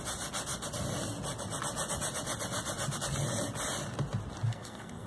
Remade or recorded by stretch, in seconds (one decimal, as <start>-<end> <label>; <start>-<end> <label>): 0.0-4.5 recorded; 4.5-5.1 remade